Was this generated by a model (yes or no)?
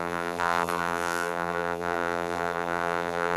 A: yes